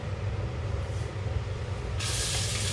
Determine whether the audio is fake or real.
real